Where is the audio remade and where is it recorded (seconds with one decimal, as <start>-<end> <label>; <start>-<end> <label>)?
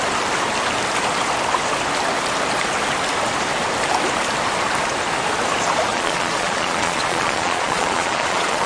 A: 0.0-5.9 recorded; 5.9-8.7 remade